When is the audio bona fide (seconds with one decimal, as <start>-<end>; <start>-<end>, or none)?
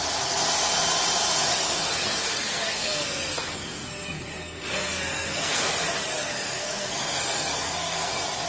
0.0-1.5; 5.7-6.2; 8.1-8.5